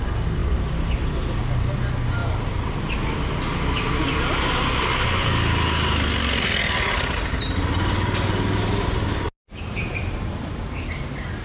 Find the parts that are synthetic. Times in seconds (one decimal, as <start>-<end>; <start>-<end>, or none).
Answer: 0.4-1.4; 2.2-2.8